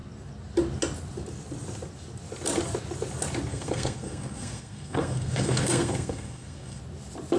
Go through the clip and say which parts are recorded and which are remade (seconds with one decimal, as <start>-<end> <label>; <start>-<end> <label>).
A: 0.0-3.5 recorded; 3.5-6.8 remade; 6.8-7.4 recorded